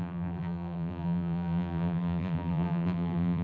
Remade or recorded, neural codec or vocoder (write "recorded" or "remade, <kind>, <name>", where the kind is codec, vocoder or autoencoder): remade, vocoder, BigVGAN v2